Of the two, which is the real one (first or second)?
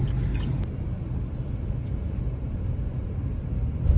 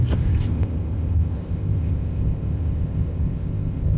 first